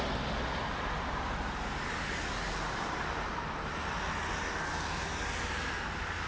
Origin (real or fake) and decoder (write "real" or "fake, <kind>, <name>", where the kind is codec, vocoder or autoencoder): real